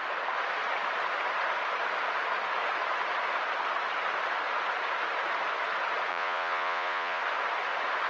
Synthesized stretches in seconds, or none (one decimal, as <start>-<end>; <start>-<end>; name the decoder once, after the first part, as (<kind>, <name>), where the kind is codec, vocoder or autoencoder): 6.1-7.2 (vocoder, Vocos)